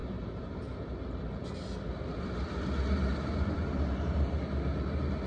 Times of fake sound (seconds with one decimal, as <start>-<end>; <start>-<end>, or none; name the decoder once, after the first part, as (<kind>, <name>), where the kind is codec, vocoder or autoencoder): 0.0-0.9 (vocoder, BigVGAN v2); 3.1-4.4

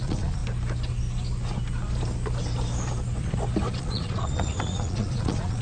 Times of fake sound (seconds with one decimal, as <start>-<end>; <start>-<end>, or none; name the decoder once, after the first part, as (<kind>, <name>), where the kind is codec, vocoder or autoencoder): 0.0-0.4 (vocoder, Vocos); 3.8-5.6

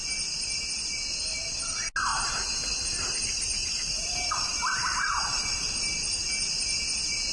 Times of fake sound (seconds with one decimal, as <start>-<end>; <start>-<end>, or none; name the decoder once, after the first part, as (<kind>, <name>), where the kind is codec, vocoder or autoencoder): none

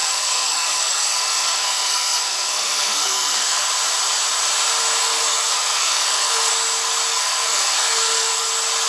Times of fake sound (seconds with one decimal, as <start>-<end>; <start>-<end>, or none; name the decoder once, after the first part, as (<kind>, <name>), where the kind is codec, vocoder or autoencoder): 0.0-3.7 (codec, SNAC); 5.0-6.5; 7.1-8.5

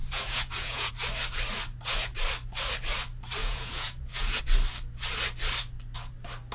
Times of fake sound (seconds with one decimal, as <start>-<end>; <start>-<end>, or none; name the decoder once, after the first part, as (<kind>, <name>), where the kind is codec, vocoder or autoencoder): 0.0-0.9 (vocoder, Vocos); 3.4-4.4